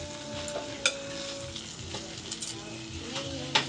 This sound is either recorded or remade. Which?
recorded